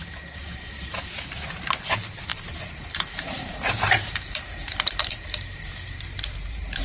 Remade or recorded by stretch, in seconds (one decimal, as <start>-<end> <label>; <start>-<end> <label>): 0.0-0.4 recorded; 0.4-1.7 remade; 1.7-2.3 recorded; 2.3-6.8 remade

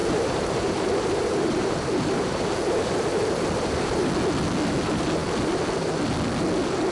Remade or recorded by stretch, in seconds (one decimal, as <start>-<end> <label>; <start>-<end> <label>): 0.0-4.1 remade; 4.1-6.9 recorded

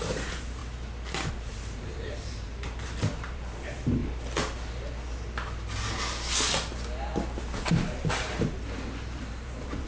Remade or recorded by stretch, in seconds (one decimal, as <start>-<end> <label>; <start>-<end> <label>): 0.0-0.6 remade; 0.6-1.3 recorded; 1.3-4.0 remade; 4.0-7.7 recorded; 7.7-9.9 remade